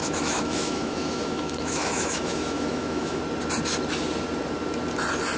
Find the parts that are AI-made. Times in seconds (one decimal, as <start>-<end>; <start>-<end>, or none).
0.0-3.2

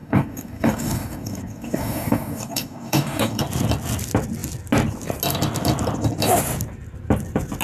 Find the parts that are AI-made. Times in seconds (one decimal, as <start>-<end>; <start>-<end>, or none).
0.0-3.4

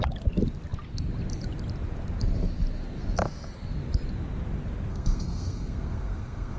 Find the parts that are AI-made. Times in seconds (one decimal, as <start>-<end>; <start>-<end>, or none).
4.9-6.6

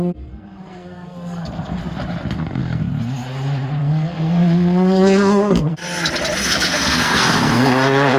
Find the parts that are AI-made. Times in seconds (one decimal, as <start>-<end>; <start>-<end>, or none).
0.0-1.8; 2.3-2.9; 3.8-5.8; 6.5-8.2